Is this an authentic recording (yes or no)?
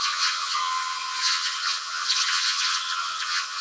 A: no